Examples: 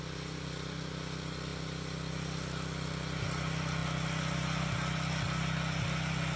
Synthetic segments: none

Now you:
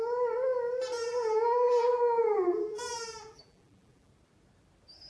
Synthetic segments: 1.0-4.1 (vocoder, BigVGAN v2)

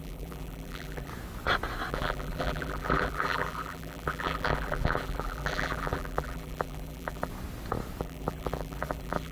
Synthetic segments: 0.0-1.1 (vocoder, BigVGAN v2); 1.9-7.3; 8.0-9.3

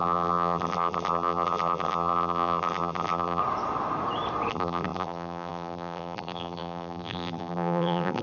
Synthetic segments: 0.0-3.4 (vocoder, BigVGAN v2); 4.5-8.2